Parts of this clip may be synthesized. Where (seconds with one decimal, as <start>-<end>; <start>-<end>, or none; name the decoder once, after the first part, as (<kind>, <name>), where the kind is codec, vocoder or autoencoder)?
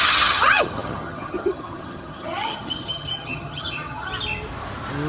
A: 0.0-4.1 (vocoder, HiFi-GAN)